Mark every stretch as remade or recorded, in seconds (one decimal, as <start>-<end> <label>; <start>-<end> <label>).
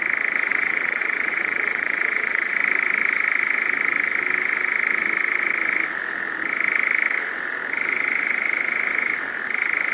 0.0-0.5 recorded; 0.5-2.5 remade; 2.5-9.9 recorded